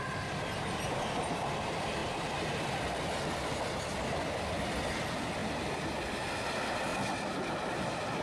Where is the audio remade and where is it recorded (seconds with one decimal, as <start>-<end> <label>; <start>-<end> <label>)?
0.0-5.4 recorded; 5.4-6.1 remade; 6.1-8.2 recorded